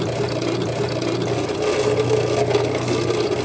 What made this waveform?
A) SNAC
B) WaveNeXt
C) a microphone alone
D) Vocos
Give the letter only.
C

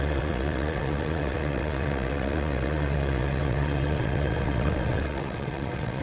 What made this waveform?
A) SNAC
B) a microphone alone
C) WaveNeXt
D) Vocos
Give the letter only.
C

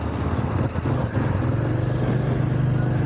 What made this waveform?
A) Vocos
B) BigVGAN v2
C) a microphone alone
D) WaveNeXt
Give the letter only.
C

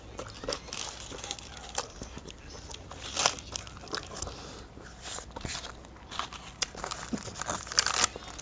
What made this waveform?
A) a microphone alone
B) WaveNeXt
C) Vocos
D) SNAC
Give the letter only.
A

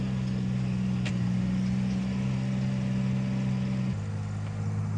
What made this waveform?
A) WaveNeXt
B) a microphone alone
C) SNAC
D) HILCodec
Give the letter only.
B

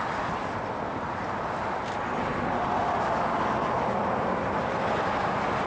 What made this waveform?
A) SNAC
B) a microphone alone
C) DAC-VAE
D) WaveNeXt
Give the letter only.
B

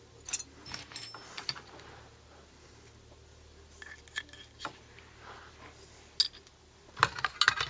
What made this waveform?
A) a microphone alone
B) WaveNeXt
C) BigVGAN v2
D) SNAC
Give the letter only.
A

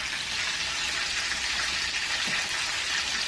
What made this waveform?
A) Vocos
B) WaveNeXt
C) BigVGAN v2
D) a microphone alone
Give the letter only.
D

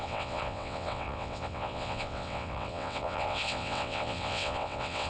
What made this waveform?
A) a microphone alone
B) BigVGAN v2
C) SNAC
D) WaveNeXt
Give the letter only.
D